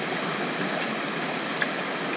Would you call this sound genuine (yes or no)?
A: yes